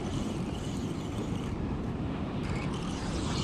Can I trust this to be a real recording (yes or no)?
no